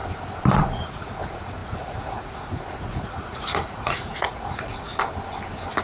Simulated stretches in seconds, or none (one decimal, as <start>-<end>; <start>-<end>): 0.6-4.9